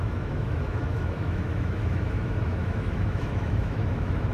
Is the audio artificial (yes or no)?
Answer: yes